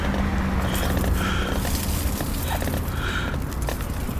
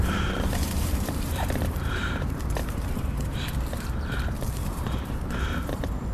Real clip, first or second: first